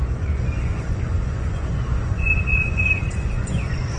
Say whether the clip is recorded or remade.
remade